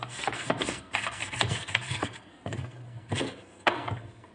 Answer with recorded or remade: remade